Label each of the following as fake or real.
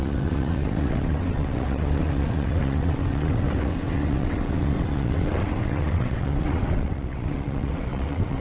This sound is fake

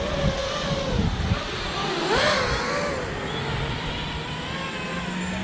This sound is real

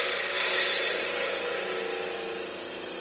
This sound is real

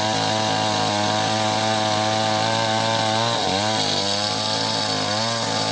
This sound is real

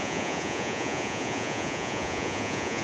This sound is fake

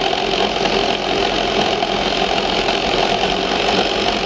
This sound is real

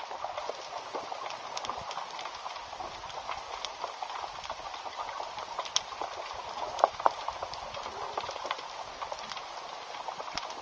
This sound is real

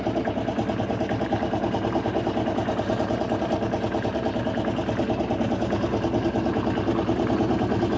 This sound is real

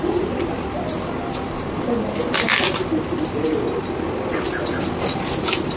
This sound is real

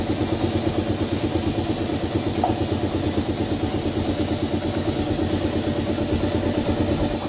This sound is real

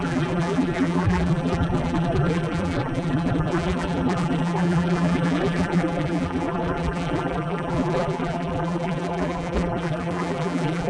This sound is fake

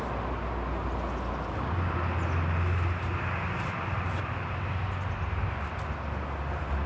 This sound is real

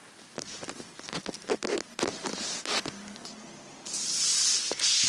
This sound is real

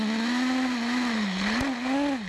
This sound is real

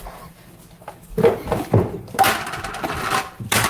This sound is real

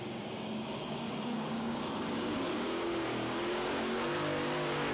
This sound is fake